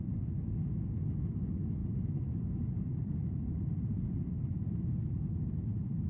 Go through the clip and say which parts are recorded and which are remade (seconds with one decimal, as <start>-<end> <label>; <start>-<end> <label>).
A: 0.0-1.8 recorded; 1.8-4.9 remade; 4.9-6.1 recorded